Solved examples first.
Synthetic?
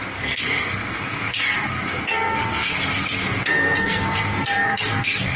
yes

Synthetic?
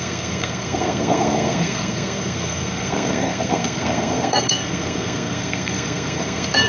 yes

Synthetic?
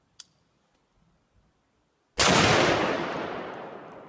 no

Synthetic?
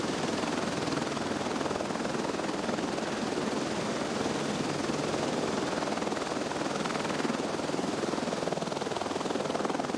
no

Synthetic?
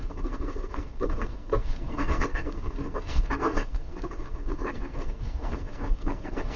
yes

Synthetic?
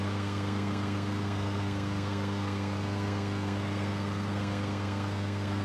yes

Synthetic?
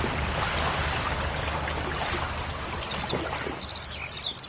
no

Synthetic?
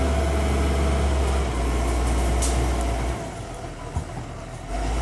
no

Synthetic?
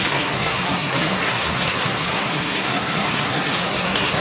yes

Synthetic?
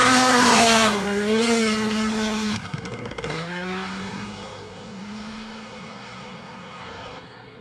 yes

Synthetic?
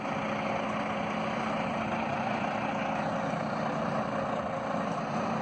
no